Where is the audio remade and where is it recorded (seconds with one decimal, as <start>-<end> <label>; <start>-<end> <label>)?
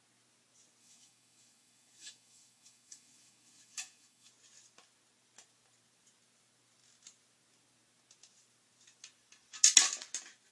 0.0-0.8 recorded; 0.8-4.3 remade; 4.3-10.5 recorded